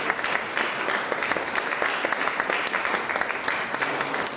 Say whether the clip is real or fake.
real